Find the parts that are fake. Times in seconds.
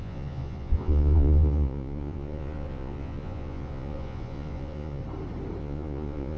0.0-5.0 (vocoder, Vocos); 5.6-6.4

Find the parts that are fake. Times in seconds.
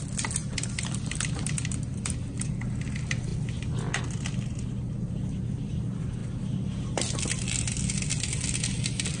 none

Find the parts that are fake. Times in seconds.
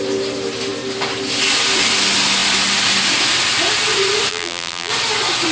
4.3-4.9 (vocoder, BigVGAN v2)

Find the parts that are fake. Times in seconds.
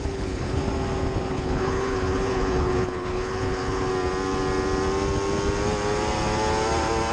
0.0-0.6 (codec, HILCodec); 1.3-3.9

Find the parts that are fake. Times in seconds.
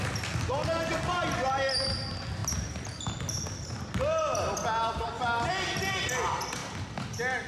none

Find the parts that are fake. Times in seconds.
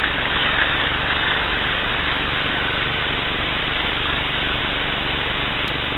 0.4-3.0 (codec, DAC); 3.6-4.6